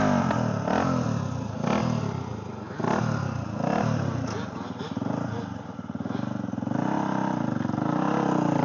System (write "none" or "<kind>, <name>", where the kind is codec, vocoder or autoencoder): none